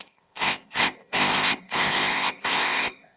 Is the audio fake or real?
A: fake